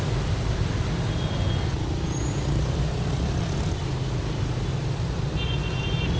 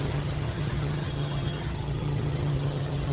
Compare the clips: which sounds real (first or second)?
first